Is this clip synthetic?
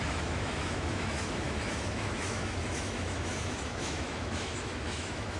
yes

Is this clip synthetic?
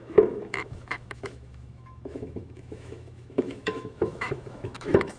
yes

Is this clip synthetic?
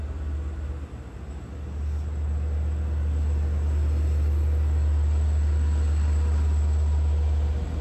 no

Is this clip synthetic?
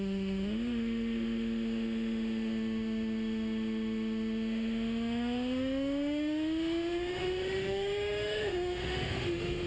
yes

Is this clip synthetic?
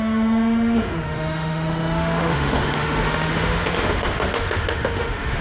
yes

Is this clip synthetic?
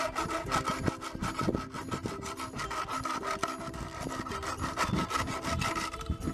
no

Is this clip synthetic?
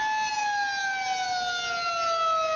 no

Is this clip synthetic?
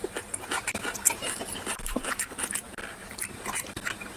no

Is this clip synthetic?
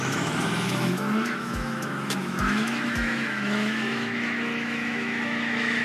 yes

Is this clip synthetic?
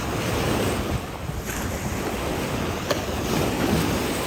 no